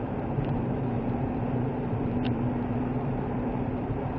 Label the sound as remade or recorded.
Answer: remade